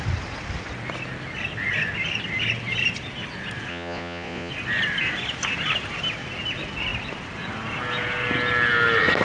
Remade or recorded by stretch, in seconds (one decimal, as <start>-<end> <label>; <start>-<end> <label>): 0.0-3.7 recorded; 3.7-4.5 remade; 4.5-9.2 recorded